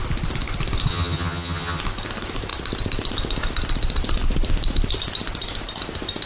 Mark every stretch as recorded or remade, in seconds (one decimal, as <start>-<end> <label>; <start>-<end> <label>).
0.0-0.9 recorded; 0.9-1.8 remade; 1.8-6.3 recorded